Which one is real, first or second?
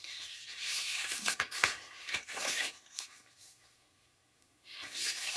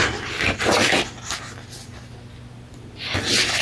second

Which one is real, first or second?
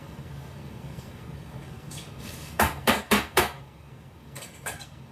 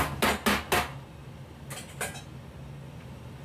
second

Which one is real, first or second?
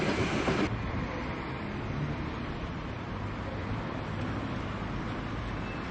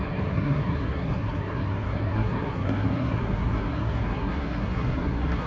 first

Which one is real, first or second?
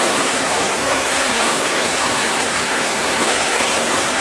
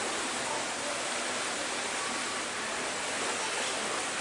second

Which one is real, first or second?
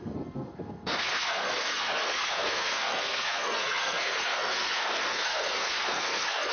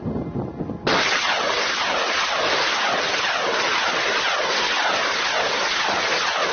second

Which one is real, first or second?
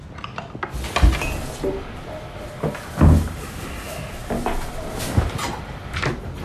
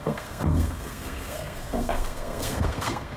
first